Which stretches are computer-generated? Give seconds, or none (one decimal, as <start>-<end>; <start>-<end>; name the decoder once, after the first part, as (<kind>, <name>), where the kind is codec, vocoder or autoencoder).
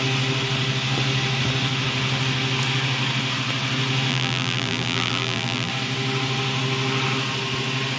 4.1-5.7 (vocoder, BigVGAN v2)